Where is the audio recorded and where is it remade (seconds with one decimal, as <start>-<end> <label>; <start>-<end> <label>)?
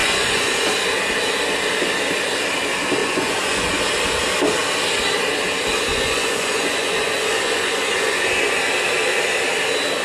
0.0-0.7 remade; 0.7-3.0 recorded; 3.0-3.8 remade; 3.8-5.9 recorded; 5.9-8.6 remade; 8.6-10.0 recorded